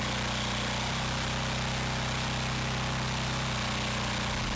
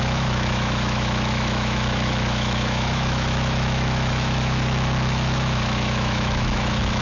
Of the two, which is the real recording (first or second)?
first